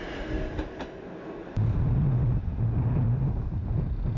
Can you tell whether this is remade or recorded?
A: recorded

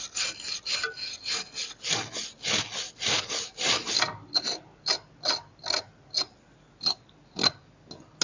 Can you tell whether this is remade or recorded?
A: recorded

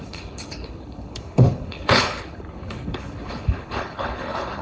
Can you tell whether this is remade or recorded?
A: remade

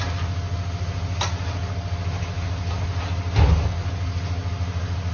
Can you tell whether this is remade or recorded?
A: recorded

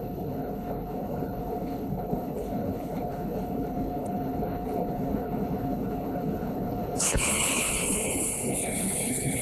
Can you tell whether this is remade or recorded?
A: remade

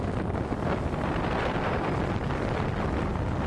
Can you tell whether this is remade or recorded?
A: recorded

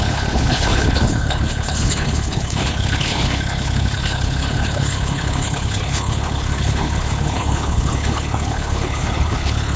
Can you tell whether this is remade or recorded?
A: remade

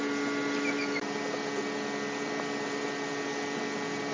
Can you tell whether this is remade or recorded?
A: recorded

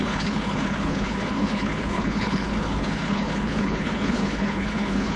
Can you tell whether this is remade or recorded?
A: remade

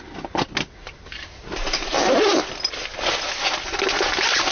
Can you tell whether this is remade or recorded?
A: recorded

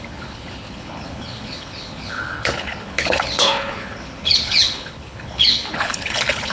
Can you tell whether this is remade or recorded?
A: remade